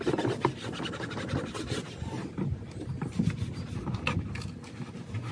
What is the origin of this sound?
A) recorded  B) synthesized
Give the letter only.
A